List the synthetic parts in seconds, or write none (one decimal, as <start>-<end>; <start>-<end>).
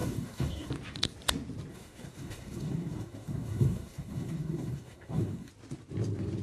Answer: 0.0-0.7; 1.7-5.5